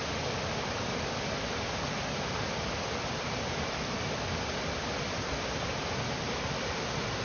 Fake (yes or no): no